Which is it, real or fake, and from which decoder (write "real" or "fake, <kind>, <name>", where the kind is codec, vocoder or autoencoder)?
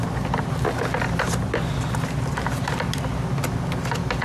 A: real